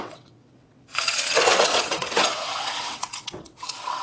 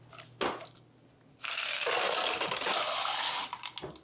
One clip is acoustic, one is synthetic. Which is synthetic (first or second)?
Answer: first